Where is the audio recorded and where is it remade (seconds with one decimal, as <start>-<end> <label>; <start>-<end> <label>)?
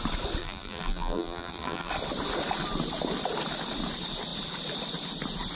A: 0.0-0.4 recorded; 0.4-1.9 remade; 1.9-5.6 recorded